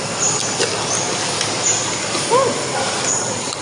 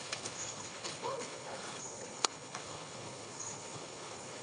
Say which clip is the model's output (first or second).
second